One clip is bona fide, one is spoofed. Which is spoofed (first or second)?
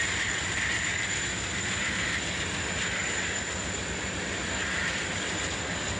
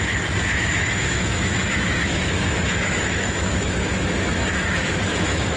second